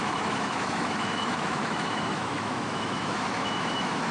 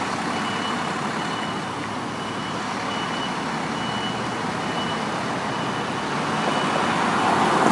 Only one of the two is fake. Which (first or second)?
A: first